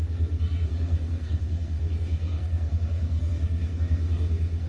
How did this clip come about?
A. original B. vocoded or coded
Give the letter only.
B